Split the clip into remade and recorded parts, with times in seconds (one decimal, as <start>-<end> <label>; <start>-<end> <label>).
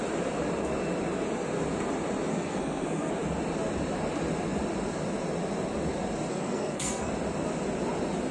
0.0-2.3 recorded; 2.3-3.1 remade; 3.1-6.3 recorded; 6.3-7.1 remade; 7.1-8.3 recorded